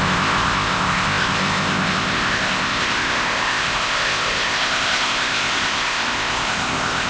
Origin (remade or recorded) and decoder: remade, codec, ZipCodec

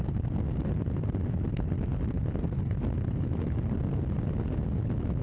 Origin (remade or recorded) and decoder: recorded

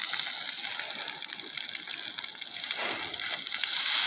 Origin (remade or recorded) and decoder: recorded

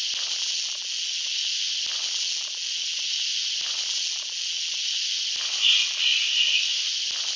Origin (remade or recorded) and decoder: recorded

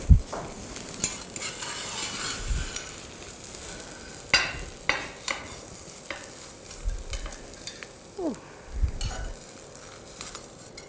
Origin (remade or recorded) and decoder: recorded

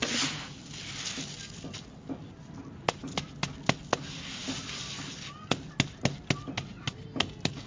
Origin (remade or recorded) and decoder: recorded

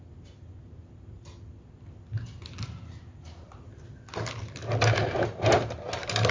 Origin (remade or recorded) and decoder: recorded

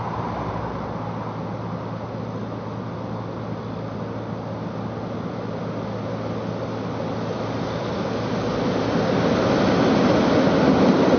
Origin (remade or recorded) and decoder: recorded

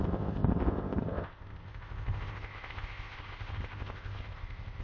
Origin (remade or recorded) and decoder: remade, codec, ZipCodec